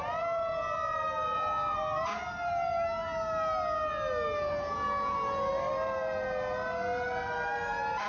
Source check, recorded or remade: recorded